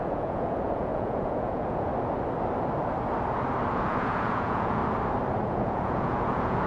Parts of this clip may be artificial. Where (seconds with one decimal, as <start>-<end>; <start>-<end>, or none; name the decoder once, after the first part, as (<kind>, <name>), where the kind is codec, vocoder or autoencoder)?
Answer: 0.0-1.9 (vocoder, Vocos); 3.7-4.8; 5.5-6.7